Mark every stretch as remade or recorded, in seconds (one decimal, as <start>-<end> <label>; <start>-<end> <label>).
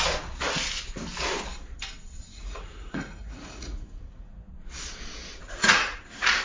0.0-2.2 recorded; 2.2-4.5 remade; 4.5-5.3 recorded; 5.3-6.4 remade